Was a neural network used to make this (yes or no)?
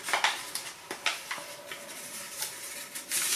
no